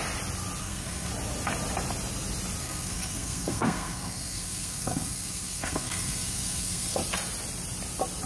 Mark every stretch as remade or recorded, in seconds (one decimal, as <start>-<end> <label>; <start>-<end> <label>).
0.0-0.6 recorded; 0.6-1.1 remade; 1.1-2.6 recorded; 2.6-7.0 remade; 7.0-8.3 recorded